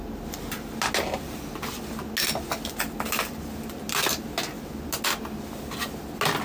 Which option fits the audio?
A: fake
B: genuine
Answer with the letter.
B